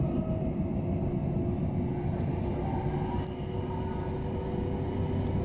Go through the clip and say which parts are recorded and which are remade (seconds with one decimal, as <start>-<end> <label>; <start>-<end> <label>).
0.0-5.4 recorded